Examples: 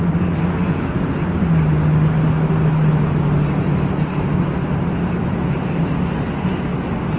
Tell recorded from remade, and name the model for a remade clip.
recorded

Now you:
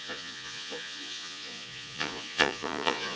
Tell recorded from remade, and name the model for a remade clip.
remade, vocoder, Vocos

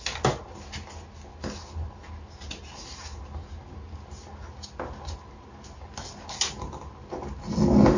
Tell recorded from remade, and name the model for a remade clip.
recorded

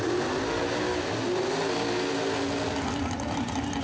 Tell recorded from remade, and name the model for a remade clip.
recorded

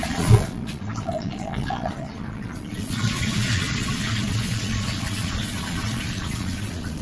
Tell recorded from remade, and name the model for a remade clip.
remade, vocoder, Vocos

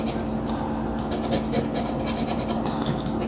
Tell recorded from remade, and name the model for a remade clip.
recorded